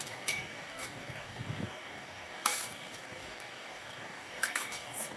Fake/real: fake